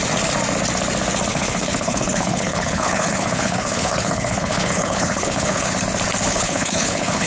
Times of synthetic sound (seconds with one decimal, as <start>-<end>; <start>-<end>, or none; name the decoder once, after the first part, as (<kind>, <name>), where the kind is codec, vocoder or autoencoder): 1.3-5.7 (codec, HILCodec); 6.3-7.3